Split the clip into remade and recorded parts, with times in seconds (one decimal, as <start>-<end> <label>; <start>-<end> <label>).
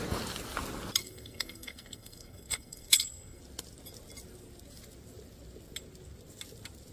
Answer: 0.0-1.0 recorded; 1.0-3.4 remade; 3.4-6.9 recorded